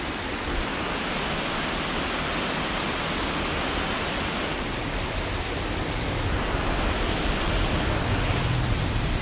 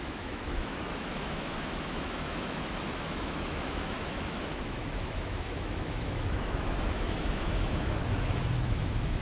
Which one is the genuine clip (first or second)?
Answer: first